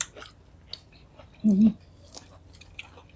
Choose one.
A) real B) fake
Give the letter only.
A